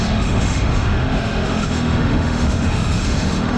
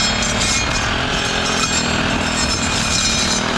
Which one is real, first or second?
second